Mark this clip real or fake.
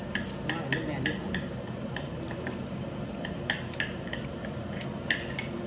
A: real